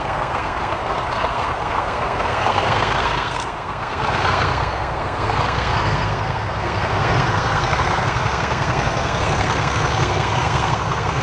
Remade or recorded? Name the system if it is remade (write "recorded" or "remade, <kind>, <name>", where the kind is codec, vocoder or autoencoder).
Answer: remade, codec, SNAC